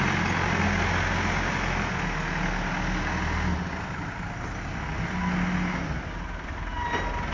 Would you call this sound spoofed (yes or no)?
no